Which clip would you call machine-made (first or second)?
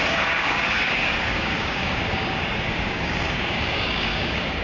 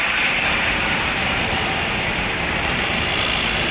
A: first